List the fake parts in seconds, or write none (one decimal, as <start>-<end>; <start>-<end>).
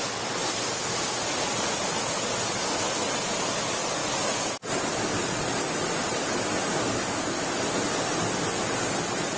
none